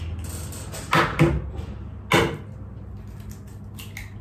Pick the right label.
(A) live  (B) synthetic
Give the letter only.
A